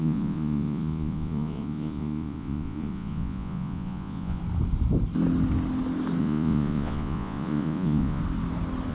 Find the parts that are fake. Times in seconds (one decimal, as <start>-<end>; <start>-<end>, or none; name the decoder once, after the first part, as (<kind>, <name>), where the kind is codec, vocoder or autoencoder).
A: 0.0-4.4 (vocoder, Vocos); 6.2-8.2